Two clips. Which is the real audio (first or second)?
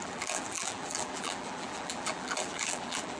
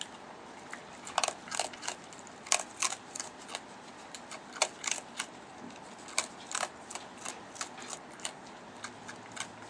second